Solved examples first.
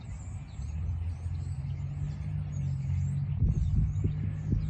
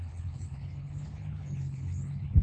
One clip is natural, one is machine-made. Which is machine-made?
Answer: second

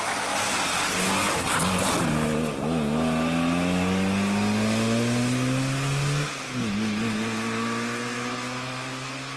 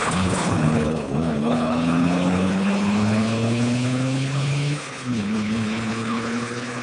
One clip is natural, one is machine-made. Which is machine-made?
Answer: second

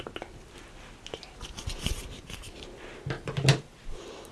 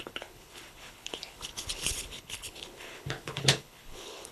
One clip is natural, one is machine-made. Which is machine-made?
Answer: second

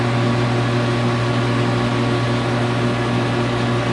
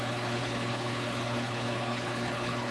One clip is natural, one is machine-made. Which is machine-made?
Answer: second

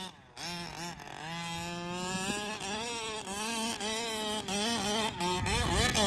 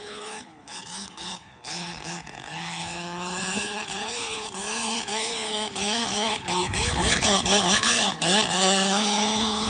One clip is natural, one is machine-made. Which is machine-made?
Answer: second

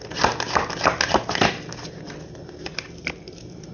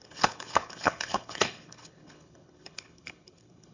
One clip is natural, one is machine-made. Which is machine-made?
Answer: second